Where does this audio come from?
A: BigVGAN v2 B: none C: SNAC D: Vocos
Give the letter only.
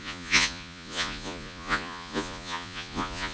D